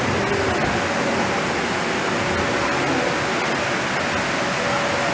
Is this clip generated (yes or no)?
no